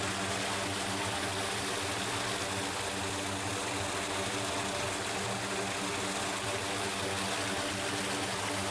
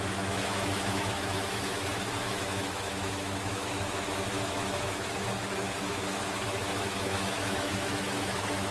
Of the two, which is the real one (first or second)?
first